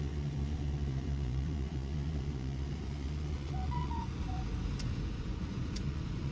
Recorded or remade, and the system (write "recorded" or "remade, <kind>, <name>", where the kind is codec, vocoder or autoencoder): remade, vocoder, Vocos